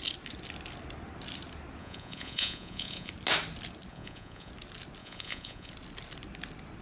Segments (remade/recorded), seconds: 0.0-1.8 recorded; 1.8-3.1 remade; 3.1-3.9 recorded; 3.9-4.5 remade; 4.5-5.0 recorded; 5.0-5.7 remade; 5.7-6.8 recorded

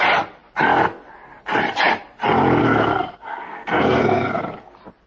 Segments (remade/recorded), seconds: 0.0-2.6 recorded; 2.6-4.4 remade; 4.4-5.1 recorded

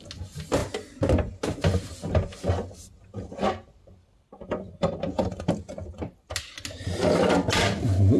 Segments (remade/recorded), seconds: 0.0-4.0 recorded; 4.0-5.5 remade; 5.5-8.2 recorded

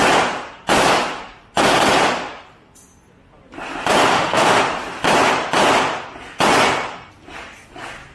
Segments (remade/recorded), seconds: 0.0-4.1 recorded; 4.1-4.6 remade; 4.6-8.1 recorded